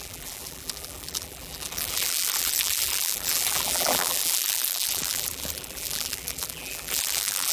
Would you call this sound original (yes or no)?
no